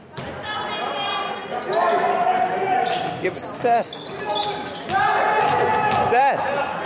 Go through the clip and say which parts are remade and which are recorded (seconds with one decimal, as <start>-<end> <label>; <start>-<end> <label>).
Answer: 0.0-6.9 recorded